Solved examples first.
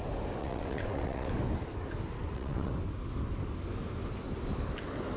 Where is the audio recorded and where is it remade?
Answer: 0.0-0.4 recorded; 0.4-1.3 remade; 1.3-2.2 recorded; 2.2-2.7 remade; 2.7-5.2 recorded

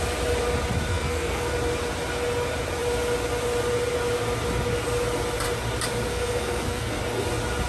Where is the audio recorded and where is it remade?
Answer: 0.0-0.9 recorded; 0.9-1.5 remade; 1.5-6.1 recorded; 6.1-7.0 remade; 7.0-7.7 recorded

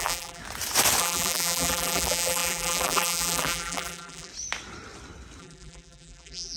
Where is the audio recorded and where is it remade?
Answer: 0.0-0.4 remade; 0.4-1.0 recorded; 1.0-4.3 remade; 4.3-5.4 recorded; 5.4-6.6 remade

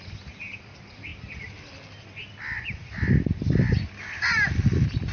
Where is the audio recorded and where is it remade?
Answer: 0.0-5.1 recorded

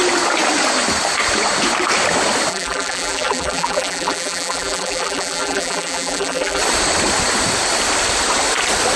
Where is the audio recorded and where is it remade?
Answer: 0.0-2.5 recorded; 2.5-6.6 remade; 6.6-9.0 recorded

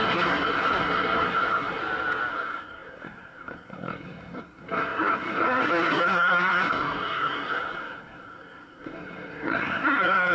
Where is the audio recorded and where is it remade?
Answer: 0.0-1.8 remade; 1.8-2.3 recorded; 2.3-10.3 remade

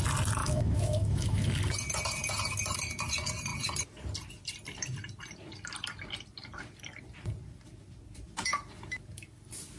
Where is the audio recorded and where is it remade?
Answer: 0.0-0.4 recorded; 0.4-1.5 remade; 1.5-9.8 recorded